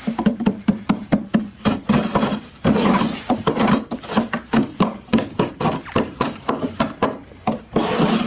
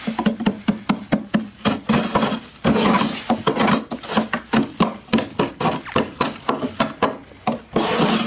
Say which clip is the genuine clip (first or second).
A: second